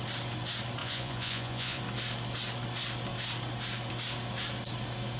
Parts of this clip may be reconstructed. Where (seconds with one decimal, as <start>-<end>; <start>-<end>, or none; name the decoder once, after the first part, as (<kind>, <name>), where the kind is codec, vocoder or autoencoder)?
0.8-1.8 (vocoder, Vocos)